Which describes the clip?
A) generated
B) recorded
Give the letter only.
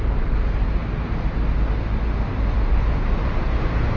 B